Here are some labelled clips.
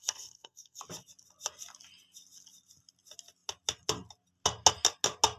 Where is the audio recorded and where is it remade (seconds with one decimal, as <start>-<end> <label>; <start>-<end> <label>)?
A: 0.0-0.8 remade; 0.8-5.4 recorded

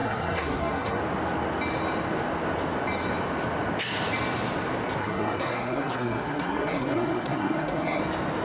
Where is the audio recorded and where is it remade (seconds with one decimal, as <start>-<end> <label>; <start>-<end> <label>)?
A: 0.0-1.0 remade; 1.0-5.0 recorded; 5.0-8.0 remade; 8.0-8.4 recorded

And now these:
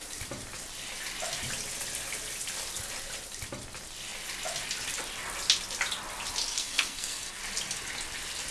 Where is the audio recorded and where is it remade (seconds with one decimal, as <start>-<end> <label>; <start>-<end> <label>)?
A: 0.0-6.5 recorded; 6.5-7.4 remade; 7.4-8.5 recorded

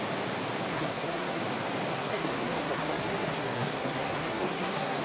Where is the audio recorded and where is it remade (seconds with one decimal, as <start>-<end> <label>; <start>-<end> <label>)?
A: 0.0-0.7 recorded; 0.7-1.4 remade; 1.4-1.9 recorded; 1.9-5.0 remade

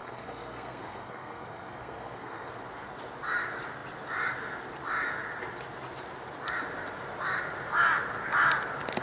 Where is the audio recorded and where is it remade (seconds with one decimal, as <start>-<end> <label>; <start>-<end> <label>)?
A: 0.0-2.5 remade; 2.5-9.0 recorded

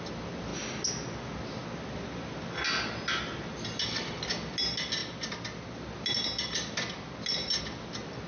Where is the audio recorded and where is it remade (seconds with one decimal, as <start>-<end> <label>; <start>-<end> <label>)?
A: 0.0-8.3 recorded